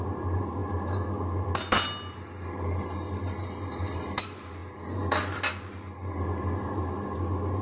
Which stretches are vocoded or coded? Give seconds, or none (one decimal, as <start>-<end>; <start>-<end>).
none